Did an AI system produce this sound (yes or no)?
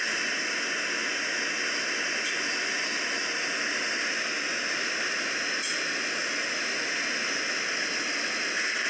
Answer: no